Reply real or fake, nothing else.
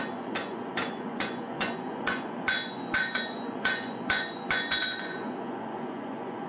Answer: fake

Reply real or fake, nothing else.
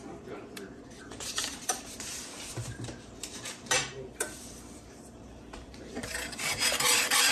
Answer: fake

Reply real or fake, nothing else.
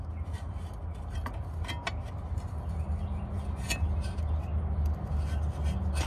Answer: real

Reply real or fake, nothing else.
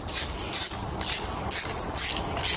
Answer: real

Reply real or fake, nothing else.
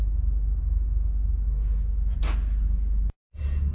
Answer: real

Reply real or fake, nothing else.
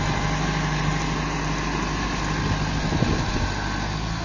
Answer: real